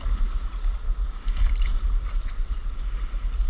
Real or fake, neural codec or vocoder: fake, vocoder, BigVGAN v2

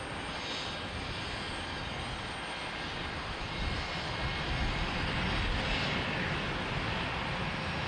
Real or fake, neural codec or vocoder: real